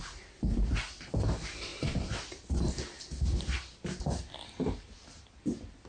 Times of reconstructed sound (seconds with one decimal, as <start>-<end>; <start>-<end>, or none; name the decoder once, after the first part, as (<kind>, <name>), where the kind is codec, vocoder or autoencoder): none